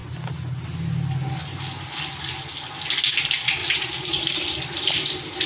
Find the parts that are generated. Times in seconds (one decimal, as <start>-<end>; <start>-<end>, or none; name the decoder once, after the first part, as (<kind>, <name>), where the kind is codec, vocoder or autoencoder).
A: 3.6-5.5 (vocoder, BigVGAN v2)